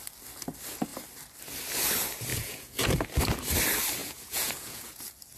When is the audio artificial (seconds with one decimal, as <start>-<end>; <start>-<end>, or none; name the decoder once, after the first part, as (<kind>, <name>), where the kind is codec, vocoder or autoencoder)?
2.3-2.9 (vocoder, Vocos); 4.0-5.0